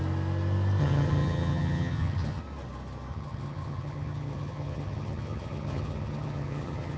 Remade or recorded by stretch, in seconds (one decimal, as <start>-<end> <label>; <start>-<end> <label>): 0.0-0.8 recorded; 0.8-2.4 remade; 2.4-3.1 recorded; 3.1-7.0 remade